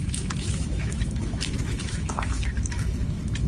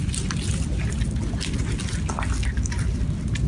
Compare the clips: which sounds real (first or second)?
second